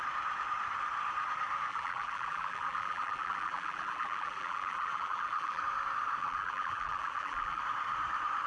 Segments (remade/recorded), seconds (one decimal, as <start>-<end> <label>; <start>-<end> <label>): 0.0-1.7 recorded; 1.7-5.6 remade; 5.6-6.2 recorded; 6.2-7.6 remade; 7.6-8.5 recorded